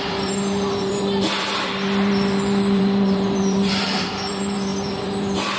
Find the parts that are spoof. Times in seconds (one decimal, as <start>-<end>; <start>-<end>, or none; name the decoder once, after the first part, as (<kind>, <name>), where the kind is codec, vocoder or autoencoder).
0.0-5.6 (vocoder, BigVGAN v2)